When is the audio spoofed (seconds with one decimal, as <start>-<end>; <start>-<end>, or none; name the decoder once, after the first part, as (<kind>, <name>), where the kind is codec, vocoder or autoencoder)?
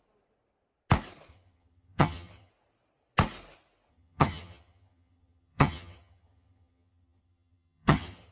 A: 1.3-2.5 (vocoder, HiFi-GAN); 3.9-8.3